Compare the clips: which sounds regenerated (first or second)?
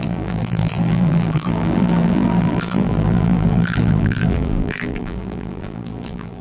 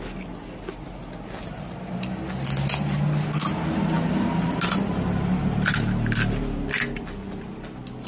first